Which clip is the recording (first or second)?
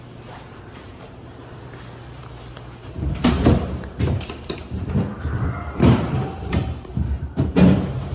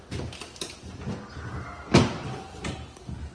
second